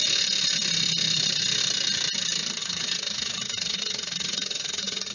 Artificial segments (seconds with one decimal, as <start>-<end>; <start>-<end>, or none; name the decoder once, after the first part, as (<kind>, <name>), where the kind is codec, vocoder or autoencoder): 2.6-5.1 (vocoder, Vocos)